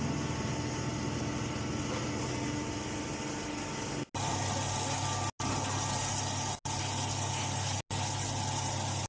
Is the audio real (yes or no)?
yes